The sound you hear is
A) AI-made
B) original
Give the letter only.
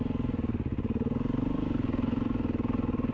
B